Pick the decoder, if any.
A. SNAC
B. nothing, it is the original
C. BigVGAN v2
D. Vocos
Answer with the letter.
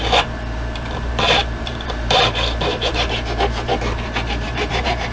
C